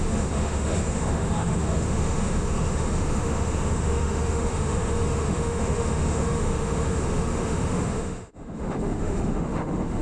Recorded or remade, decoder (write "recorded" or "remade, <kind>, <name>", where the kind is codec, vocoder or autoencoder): remade, autoencoder, DAC-VAE